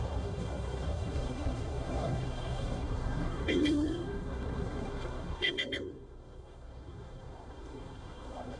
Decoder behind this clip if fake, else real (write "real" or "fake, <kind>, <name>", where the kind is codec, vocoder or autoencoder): fake, codec, SNAC